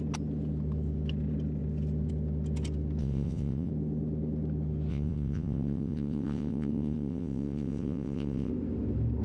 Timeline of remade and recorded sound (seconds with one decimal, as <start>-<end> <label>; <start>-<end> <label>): 0.0-3.0 recorded; 3.0-3.7 remade; 3.7-4.9 recorded; 4.9-8.5 remade; 8.5-9.2 recorded